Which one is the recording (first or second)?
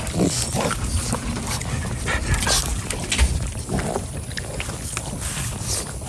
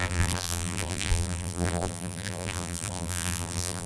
first